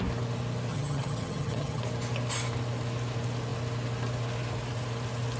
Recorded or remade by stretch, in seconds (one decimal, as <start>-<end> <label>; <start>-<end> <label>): 0.0-0.7 recorded; 0.7-1.8 remade; 1.8-5.4 recorded